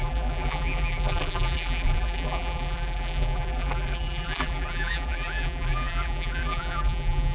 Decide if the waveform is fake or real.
fake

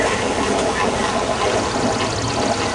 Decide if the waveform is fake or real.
real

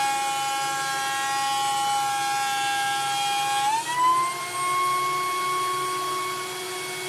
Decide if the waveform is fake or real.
real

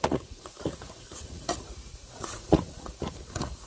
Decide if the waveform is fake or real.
fake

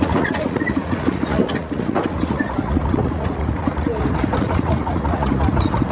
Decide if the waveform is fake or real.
fake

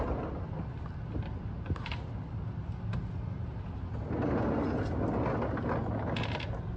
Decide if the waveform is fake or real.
real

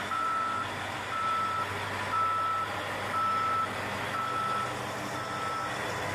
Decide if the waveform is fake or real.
real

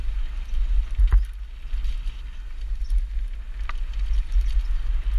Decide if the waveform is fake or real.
real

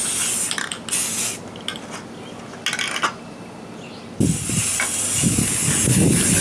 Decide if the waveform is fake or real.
real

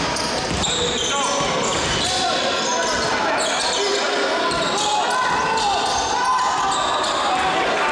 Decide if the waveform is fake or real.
real